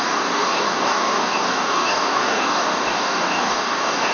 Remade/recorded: remade